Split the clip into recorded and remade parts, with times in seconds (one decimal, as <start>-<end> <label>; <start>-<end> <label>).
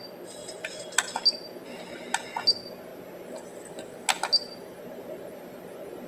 0.0-0.4 recorded; 0.4-0.9 remade; 0.9-6.1 recorded